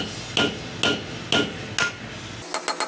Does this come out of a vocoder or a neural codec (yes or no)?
no